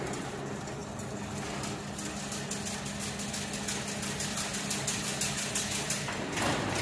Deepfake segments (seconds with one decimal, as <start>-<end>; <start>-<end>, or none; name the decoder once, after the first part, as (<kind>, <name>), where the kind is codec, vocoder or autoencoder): none